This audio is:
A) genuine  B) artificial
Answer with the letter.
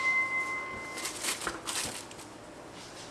A